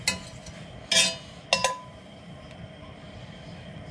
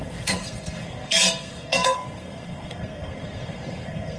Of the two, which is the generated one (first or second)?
second